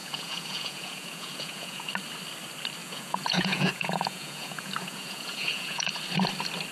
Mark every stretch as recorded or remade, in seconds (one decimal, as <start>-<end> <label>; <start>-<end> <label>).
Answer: 0.0-1.9 remade; 1.9-2.8 recorded; 2.8-5.9 remade; 5.9-6.7 recorded